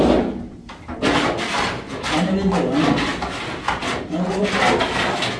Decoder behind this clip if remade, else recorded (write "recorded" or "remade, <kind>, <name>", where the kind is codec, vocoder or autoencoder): recorded